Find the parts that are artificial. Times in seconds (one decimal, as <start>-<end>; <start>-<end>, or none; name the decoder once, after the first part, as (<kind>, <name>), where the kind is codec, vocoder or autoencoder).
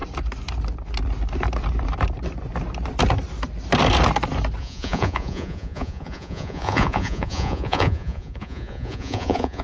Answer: 4.6-9.6 (vocoder, Vocos)